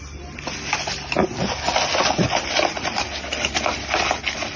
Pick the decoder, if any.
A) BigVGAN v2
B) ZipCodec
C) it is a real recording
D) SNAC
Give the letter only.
C